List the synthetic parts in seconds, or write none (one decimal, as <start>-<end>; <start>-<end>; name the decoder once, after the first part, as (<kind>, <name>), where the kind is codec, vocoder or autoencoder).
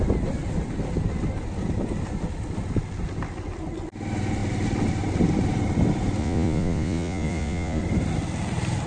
6.2-7.8 (vocoder, Vocos)